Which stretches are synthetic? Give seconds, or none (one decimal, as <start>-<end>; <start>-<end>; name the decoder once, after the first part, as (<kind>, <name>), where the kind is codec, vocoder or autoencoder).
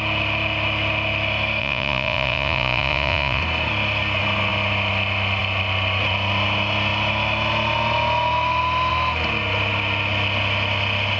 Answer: 1.6-3.4 (vocoder, Vocos)